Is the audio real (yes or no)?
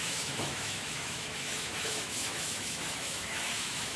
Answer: no